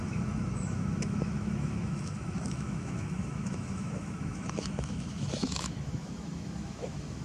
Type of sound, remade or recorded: remade